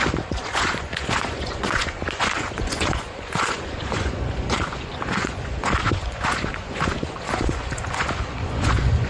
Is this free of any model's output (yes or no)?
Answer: no